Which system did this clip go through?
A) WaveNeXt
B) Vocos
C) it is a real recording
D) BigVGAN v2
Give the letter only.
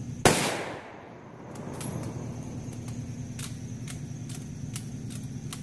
C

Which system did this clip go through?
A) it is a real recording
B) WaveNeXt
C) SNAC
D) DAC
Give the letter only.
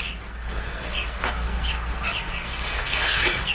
C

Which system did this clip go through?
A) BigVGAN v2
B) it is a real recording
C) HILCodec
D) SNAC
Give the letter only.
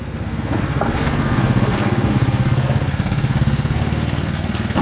D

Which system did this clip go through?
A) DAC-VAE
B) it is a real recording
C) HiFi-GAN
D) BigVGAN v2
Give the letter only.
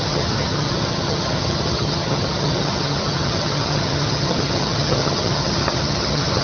C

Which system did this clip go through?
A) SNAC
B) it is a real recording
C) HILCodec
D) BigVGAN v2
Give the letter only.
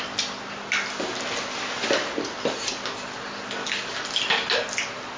B